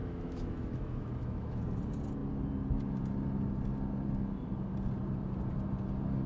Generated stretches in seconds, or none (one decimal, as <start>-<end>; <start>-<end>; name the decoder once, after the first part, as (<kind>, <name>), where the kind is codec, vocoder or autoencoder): 0.0-1.6 (autoencoder, DAC-VAE)